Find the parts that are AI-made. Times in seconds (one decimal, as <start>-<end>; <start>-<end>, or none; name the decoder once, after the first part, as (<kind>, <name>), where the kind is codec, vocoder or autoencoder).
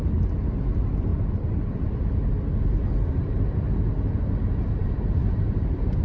0.0-1.1 (vocoder, BigVGAN v2); 4.7-6.0